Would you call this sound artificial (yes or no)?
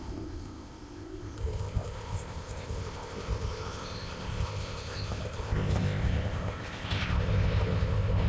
yes